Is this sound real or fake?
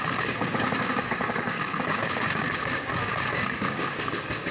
fake